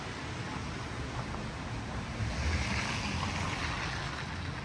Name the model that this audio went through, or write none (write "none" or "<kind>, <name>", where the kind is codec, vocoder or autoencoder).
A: none